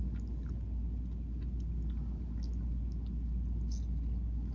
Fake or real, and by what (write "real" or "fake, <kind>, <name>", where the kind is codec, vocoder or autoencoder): real